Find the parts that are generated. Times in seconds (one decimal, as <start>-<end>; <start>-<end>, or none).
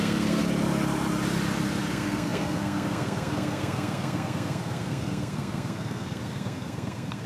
0.0-0.4; 1.9-7.3